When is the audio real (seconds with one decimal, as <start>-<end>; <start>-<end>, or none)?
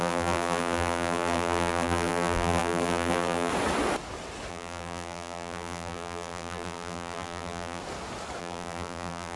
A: 3.5-4.5; 7.8-8.4